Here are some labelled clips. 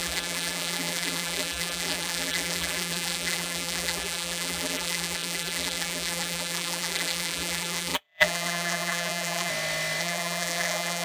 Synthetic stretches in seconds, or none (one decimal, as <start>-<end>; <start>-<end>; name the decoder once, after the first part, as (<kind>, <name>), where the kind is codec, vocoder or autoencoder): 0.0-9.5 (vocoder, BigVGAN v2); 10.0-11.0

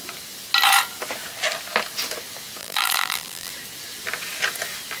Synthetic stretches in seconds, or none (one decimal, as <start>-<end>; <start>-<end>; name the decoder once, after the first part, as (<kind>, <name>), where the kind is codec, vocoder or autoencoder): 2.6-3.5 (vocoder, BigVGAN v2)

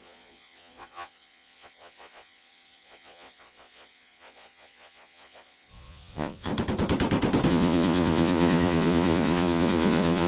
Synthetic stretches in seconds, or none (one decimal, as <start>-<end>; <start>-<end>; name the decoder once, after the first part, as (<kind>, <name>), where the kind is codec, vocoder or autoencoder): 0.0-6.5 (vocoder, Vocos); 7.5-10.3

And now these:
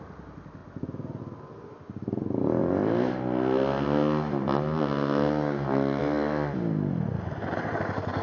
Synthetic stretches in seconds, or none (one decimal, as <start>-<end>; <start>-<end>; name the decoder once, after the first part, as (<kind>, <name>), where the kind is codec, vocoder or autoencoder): none

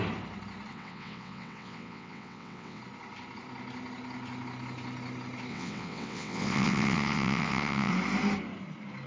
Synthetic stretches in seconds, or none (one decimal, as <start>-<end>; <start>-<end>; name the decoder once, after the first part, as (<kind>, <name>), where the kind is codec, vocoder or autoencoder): 0.7-2.8 (vocoder, WaveNeXt); 5.5-7.9